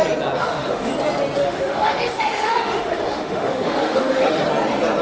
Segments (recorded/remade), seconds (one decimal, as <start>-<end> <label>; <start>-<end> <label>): 0.0-0.4 recorded; 0.4-0.9 remade; 0.9-1.4 recorded; 1.4-4.4 remade; 4.4-5.0 recorded